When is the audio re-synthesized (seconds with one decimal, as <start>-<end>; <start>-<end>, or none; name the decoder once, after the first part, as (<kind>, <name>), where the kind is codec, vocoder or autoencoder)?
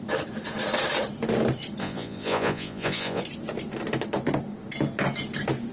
1.8-3.2 (vocoder, Vocos)